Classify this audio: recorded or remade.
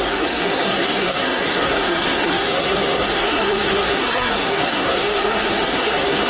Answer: remade